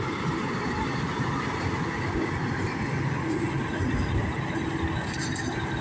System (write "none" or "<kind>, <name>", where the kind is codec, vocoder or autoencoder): none